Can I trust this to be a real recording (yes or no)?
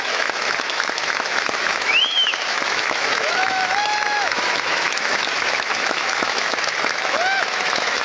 no